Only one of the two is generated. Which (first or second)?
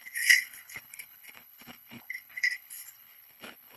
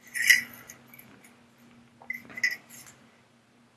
first